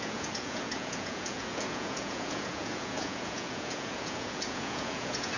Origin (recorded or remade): remade